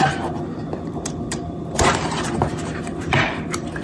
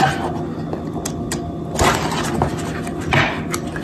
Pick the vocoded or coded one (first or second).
first